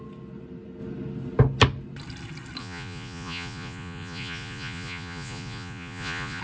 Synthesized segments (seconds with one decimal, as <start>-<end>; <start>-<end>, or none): 2.6-6.4